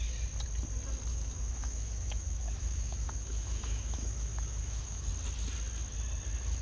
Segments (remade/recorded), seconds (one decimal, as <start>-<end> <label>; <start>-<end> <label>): 0.0-1.1 recorded; 1.1-5.1 remade; 5.1-6.6 recorded